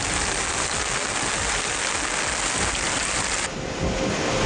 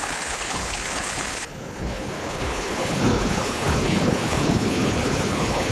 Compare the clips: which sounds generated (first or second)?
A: second